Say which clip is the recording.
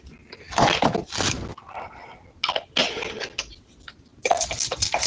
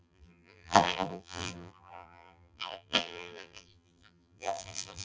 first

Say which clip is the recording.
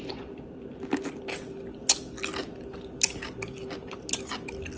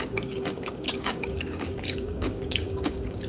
first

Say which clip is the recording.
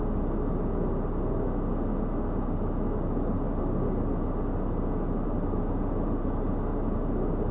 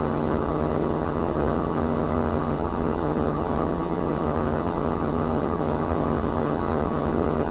first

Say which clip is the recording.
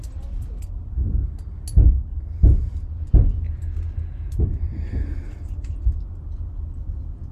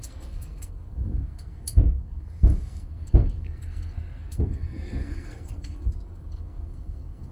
first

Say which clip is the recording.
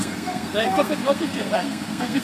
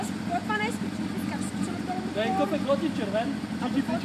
second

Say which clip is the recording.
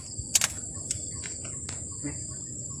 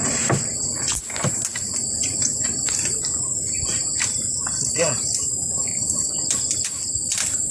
first